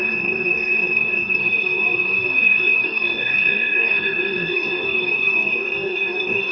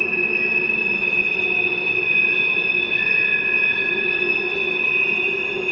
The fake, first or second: first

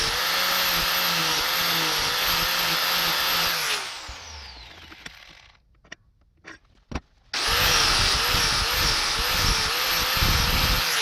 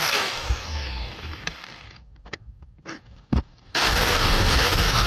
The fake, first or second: second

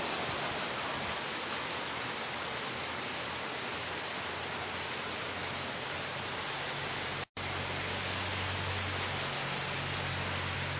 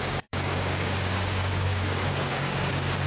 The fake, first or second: second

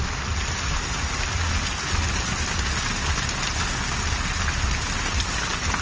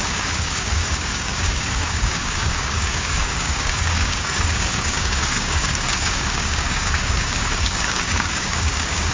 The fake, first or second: second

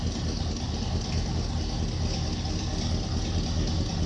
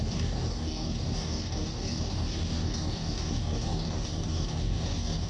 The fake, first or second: second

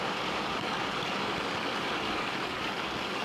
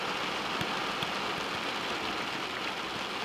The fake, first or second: first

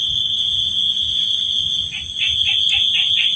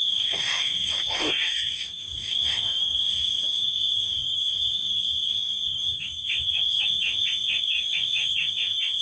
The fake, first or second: second